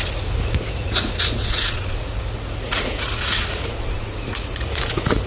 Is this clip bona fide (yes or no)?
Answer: no